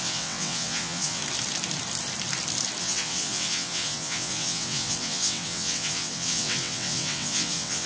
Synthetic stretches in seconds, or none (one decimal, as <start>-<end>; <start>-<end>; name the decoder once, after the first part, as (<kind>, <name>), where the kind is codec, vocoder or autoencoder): 0.0-1.2 (vocoder, WaveNeXt); 2.8-7.9